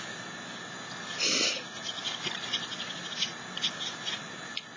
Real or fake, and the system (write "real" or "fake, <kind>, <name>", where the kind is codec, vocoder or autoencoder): real